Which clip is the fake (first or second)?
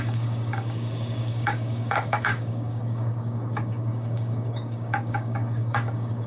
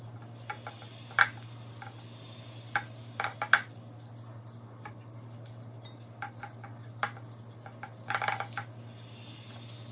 first